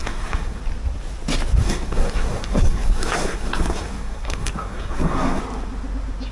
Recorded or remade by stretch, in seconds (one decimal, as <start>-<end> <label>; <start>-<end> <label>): 0.0-0.6 remade; 0.6-1.6 recorded; 1.6-5.4 remade; 5.4-6.3 recorded